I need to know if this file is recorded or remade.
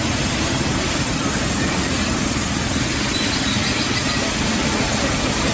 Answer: recorded